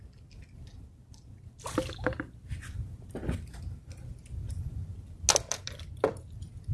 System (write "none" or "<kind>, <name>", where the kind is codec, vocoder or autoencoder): none